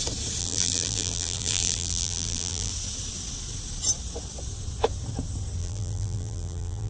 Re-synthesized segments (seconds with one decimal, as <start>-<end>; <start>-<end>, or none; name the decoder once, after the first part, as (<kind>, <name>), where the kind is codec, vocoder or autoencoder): 0.4-2.7 (vocoder, BigVGAN v2); 5.6-6.9